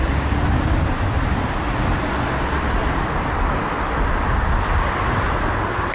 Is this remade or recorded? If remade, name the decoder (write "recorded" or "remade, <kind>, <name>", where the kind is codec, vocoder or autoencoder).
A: remade, vocoder, BigVGAN v2